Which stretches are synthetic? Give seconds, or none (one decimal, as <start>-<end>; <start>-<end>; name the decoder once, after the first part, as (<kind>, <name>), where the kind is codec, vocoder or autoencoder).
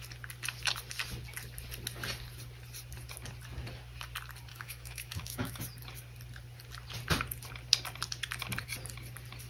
4.5-5.6 (autoencoder, DAC-VAE)